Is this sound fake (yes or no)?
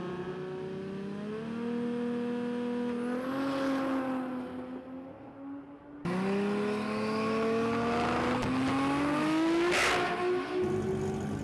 no